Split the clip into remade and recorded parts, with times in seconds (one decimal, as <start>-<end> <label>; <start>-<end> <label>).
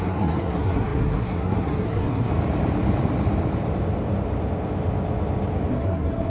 0.0-2.3 remade; 2.3-5.7 recorded; 5.7-6.3 remade